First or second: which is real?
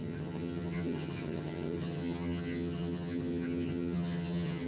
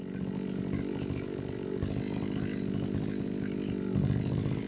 second